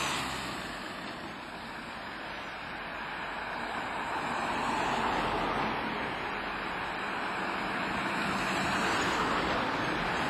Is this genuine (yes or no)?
yes